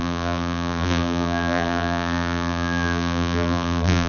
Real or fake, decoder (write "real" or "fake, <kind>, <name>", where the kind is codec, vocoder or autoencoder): fake, vocoder, BigVGAN v2